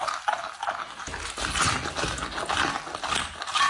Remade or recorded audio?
recorded